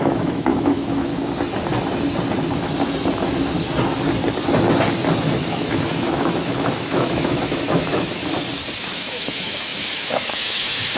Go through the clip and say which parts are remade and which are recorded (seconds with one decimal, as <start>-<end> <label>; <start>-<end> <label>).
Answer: 0.0-1.1 remade; 1.1-5.5 recorded; 5.5-8.2 remade; 8.2-8.8 recorded; 8.8-11.0 remade

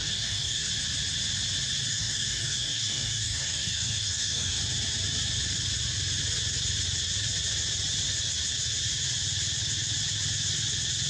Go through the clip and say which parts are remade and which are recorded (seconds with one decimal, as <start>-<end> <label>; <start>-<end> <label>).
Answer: 0.0-0.7 remade; 0.7-1.9 recorded; 1.9-4.6 remade; 4.6-11.1 recorded